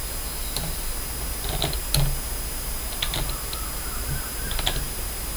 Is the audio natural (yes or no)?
yes